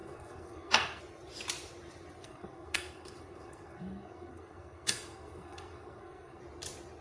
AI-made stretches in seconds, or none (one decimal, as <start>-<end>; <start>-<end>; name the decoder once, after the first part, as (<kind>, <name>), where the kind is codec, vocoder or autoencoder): 0.0-1.0 (codec, SNAC); 2.2-6.4